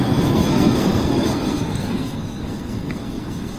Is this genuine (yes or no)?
no